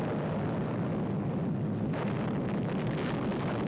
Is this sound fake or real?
real